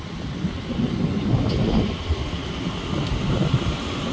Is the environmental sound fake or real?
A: real